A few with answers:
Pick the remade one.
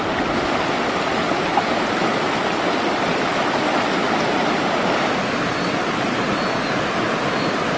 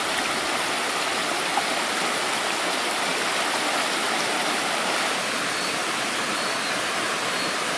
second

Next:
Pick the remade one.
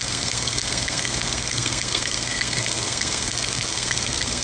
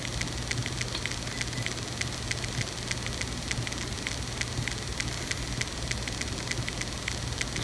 first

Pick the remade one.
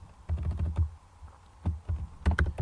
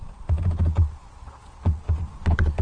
second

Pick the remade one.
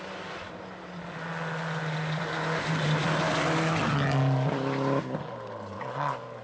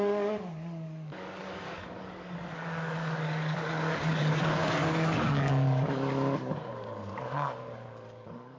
second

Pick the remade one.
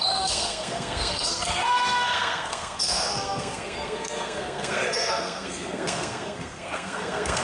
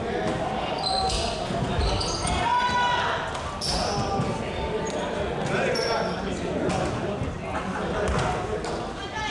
first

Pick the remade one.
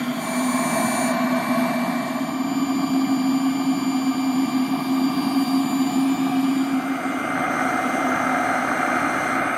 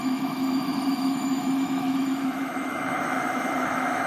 second